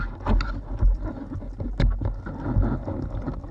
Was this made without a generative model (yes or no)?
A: yes